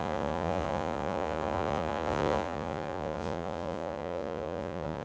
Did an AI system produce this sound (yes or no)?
yes